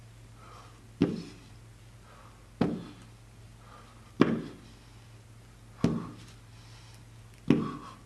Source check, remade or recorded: recorded